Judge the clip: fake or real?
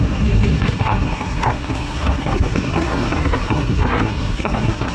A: fake